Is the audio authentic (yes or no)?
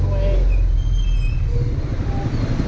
yes